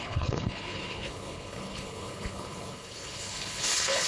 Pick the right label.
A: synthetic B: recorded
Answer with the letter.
A